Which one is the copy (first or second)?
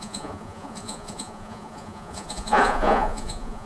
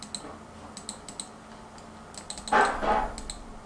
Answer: first